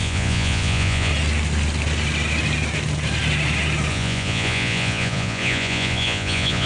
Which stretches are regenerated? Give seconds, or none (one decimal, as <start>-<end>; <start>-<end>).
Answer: 0.0-1.1; 3.9-6.7